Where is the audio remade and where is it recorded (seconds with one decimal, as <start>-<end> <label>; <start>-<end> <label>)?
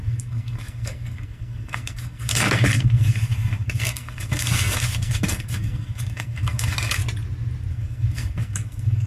0.0-7.0 remade; 7.0-7.7 recorded; 7.7-9.1 remade